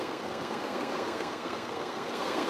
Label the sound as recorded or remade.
remade